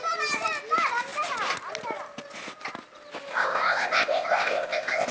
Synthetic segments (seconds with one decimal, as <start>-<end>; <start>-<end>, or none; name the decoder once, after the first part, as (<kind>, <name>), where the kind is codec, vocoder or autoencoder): 3.3-5.1 (codec, ZipCodec)